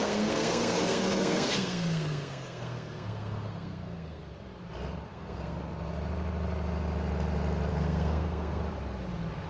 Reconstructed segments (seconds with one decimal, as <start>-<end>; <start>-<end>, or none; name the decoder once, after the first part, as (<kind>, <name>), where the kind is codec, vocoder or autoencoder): 0.0-4.2 (codec, SNAC); 5.1-5.6; 7.7-8.6

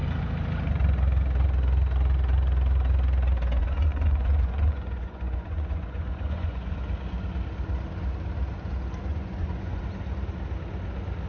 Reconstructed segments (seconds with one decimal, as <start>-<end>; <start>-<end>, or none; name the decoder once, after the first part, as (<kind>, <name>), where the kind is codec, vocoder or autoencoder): 3.6-6.7 (vocoder, Vocos); 9.1-9.8

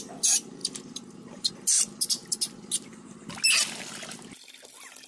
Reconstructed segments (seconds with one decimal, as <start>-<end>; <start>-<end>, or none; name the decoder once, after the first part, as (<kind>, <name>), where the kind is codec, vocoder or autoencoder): 0.6-1.5 (vocoder, BigVGAN v2)

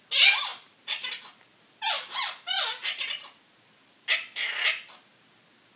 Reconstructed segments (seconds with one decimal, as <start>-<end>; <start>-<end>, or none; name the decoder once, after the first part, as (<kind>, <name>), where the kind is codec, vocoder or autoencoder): none

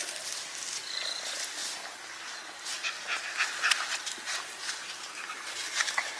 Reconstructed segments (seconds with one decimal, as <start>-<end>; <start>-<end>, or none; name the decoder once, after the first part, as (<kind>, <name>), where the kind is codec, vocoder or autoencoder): none

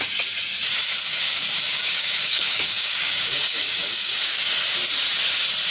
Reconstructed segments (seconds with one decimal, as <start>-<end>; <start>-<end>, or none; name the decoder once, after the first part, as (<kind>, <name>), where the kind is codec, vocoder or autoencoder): 1.1-4.5 (codec, DAC)

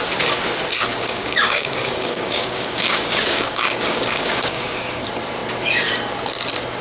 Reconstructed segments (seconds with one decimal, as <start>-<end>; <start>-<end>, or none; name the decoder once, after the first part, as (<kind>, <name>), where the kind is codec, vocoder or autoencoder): 0.9-5.0 (codec, DAC)